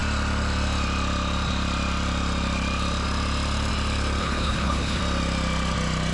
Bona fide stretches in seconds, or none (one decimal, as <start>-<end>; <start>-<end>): 0.0-4.2; 5.0-6.1